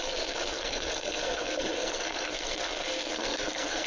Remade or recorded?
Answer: remade